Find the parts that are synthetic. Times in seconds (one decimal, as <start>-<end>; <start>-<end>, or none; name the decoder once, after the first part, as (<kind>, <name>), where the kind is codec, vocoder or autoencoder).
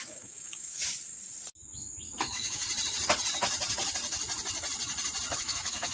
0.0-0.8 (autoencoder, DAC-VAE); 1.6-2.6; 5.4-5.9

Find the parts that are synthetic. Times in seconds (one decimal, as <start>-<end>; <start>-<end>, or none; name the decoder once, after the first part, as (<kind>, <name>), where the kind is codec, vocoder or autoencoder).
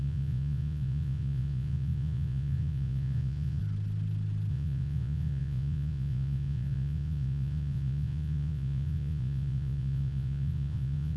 0.0-3.6 (vocoder, Vocos); 4.5-11.2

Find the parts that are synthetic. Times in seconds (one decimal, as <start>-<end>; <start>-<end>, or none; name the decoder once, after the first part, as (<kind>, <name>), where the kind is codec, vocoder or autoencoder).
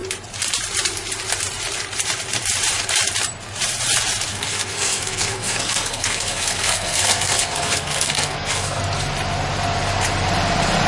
4.3-8.8 (codec, SNAC)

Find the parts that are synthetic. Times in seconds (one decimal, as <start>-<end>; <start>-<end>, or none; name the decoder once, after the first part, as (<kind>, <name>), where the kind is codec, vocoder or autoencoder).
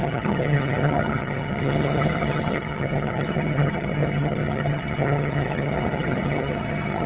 0.0-7.1 (vocoder, HiFi-GAN)